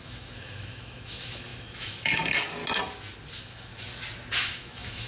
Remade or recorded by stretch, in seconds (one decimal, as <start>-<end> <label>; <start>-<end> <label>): 0.0-2.6 remade; 2.6-3.3 recorded; 3.3-3.7 remade; 3.7-4.3 recorded; 4.3-5.1 remade